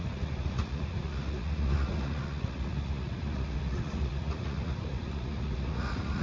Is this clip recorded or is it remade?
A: remade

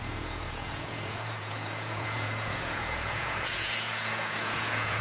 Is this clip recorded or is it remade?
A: remade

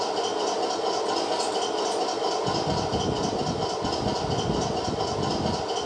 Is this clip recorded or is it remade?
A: recorded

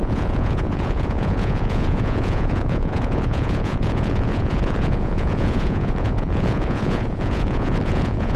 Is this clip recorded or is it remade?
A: remade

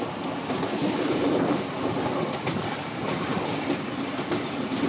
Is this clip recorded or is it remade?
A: recorded